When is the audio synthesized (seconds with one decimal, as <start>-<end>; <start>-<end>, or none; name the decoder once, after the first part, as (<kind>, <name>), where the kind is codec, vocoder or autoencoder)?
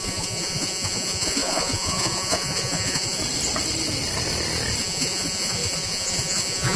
0.0-3.2 (vocoder, Vocos); 4.8-6.8